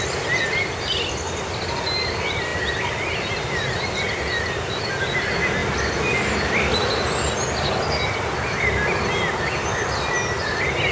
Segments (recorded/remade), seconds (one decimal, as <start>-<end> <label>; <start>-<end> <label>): 0.0-2.5 recorded; 2.5-5.0 remade; 5.0-5.6 recorded; 5.6-6.7 remade; 6.7-10.9 recorded